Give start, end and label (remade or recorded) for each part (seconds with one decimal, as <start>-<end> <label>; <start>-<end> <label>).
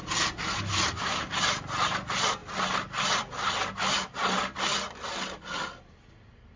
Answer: 0.0-6.6 recorded